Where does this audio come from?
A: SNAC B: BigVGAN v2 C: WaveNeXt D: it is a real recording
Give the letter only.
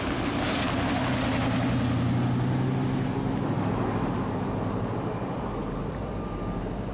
D